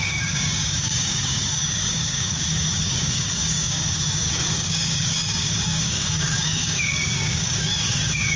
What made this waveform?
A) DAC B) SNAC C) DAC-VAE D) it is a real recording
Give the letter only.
A